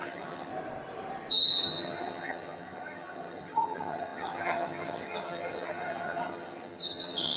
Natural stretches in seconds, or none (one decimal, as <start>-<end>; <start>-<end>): 0.5-1.3